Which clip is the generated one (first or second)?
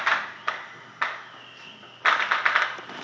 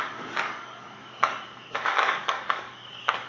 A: second